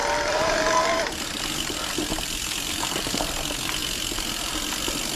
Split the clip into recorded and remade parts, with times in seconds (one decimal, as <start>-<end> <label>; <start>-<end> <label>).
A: 0.0-3.1 remade; 3.1-5.2 recorded